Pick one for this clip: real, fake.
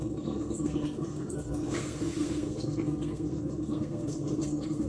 fake